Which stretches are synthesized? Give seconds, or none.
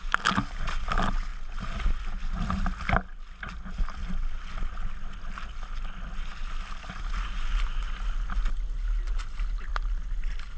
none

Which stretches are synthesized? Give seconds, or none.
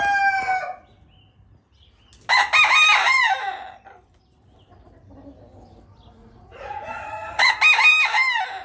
6.2-7.5 (vocoder, Vocos)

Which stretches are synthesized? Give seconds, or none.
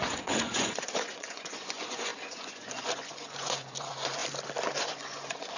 0.0-4.2 (vocoder, Vocos); 4.8-5.6